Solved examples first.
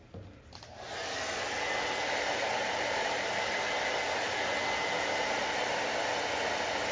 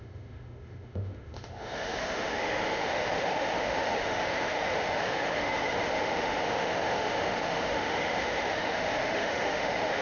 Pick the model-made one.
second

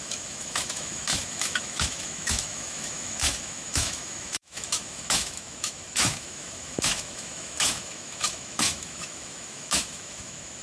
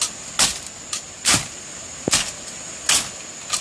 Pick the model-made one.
first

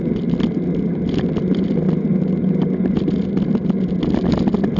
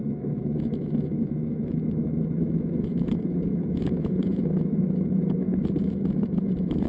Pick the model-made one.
second